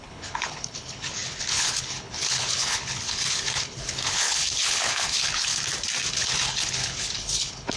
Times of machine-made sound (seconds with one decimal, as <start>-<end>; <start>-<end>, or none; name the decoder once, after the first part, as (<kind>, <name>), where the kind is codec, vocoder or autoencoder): 0.0-5.5 (codec, HILCodec); 6.1-7.8